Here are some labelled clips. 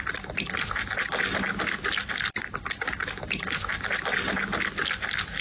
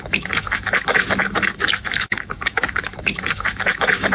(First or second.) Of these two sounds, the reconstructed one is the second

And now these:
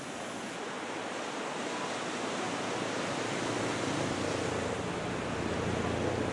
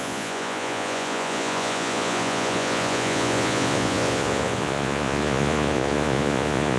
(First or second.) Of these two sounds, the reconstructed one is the second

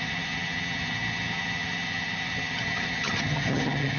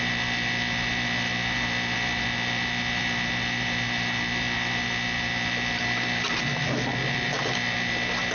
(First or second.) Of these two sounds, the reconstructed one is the first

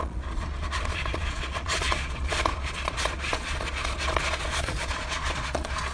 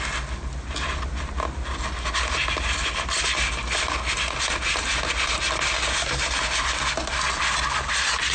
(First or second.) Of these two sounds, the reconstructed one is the first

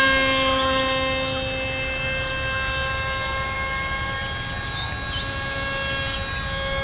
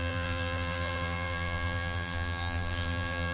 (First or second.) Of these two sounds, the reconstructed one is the second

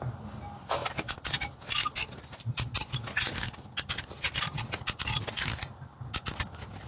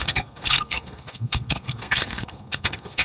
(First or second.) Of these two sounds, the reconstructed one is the second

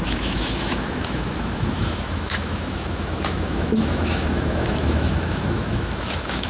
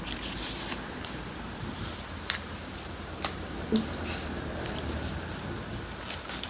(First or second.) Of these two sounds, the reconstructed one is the first